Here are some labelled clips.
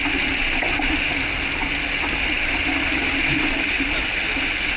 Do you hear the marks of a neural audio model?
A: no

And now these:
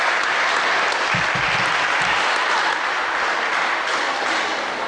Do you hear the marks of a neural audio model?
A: no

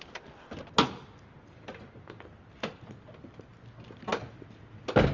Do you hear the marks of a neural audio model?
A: no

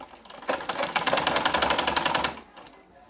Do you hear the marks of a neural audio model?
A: no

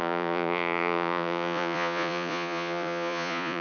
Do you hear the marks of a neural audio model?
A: yes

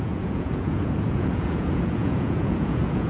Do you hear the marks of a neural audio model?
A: yes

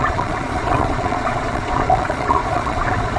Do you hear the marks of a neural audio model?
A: yes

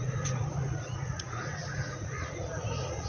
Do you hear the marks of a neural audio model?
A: yes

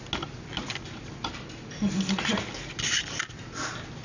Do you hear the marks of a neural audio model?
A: no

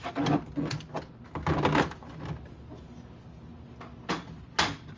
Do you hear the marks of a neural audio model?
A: no